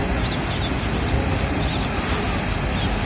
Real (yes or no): yes